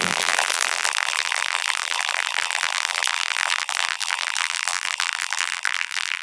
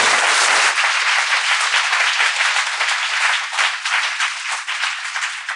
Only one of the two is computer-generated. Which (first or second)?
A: first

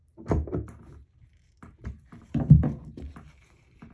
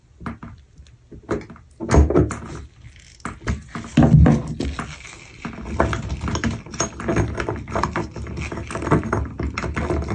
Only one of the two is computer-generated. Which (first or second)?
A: first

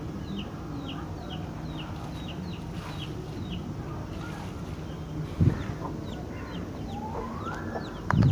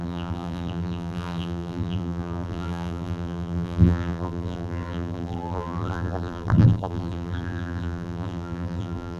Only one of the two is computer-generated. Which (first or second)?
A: second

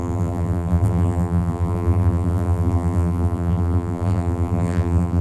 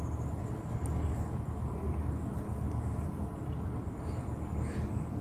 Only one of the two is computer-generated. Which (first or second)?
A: first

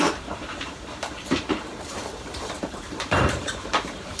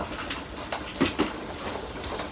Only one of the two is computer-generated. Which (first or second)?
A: first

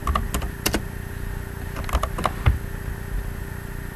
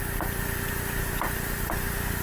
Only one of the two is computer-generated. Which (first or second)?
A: second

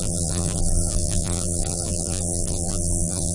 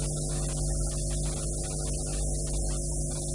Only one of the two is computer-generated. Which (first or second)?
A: first